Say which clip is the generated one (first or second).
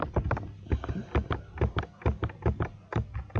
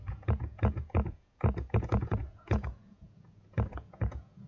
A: second